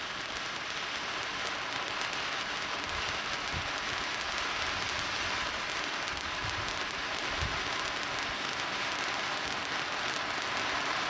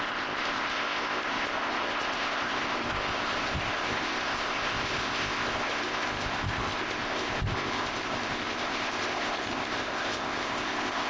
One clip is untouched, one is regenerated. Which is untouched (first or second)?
first